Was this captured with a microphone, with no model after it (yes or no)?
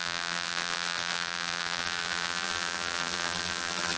no